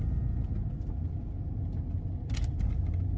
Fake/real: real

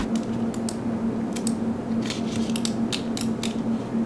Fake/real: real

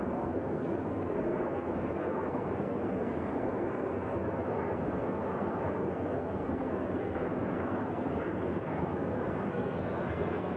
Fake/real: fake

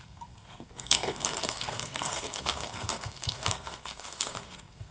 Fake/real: fake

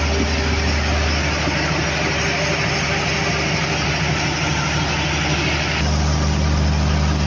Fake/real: real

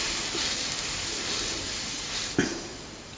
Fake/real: real